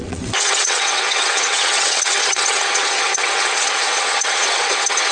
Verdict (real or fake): fake